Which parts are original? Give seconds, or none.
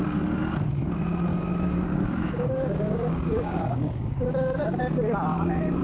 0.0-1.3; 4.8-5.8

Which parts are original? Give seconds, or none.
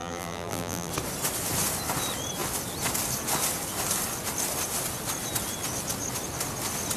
0.9-7.0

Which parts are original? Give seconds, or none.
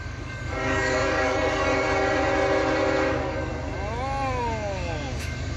1.7-3.1; 3.5-4.4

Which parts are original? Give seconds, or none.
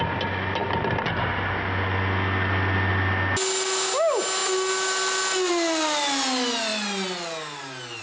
0.0-8.0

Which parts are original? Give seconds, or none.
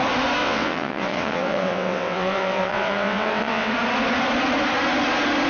0.0-0.4; 3.7-5.5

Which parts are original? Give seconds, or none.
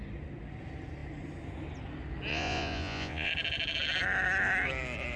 0.0-2.3; 3.3-5.2